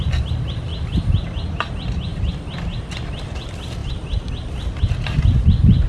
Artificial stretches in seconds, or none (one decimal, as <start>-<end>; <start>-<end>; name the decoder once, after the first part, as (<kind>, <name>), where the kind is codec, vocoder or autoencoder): 0.0-0.7 (vocoder, BigVGAN v2); 1.7-5.9